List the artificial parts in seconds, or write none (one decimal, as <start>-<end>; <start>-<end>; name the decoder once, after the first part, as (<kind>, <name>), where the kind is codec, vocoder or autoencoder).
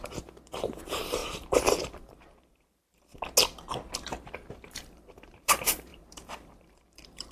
0.0-1.2 (vocoder, BigVGAN v2); 1.8-3.1; 4.5-7.3